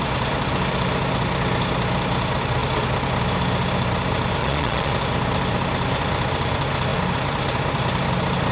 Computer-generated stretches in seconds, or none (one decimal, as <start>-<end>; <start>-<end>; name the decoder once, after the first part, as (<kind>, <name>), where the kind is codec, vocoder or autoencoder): 4.4-4.9 (vocoder, Vocos)

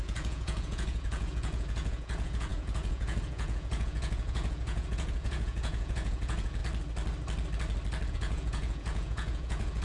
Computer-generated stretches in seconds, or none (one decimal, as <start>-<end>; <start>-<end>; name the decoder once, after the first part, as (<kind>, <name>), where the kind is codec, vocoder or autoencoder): 0.0-6.6 (vocoder, Vocos); 8.1-9.8

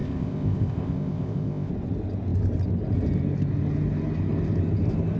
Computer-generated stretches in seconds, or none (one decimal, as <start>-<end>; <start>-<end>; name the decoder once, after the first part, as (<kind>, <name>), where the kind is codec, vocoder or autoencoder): 0.0-1.7 (codec, ZipCodec)

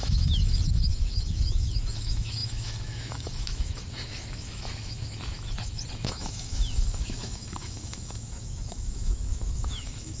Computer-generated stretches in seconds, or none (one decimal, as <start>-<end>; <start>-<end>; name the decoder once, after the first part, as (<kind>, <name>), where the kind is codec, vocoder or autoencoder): 0.0-10.2 (autoencoder, DAC-VAE)

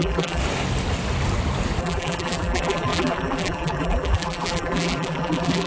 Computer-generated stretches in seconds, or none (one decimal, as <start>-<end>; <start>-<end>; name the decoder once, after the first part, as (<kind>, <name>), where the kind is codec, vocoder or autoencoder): 0.0-0.4 (vocoder, BigVGAN v2); 1.8-5.7